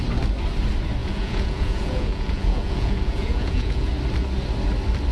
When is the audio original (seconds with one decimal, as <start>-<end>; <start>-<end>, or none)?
0.0-1.0; 3.9-5.1